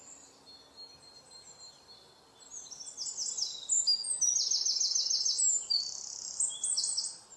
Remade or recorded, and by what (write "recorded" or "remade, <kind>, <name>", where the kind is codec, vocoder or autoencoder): recorded